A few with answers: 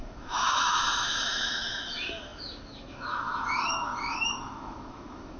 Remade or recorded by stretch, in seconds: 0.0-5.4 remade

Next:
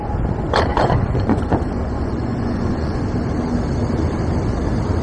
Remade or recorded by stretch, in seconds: 0.0-0.7 recorded; 0.7-3.0 remade; 3.0-5.0 recorded